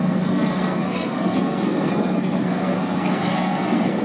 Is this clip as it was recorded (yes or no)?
no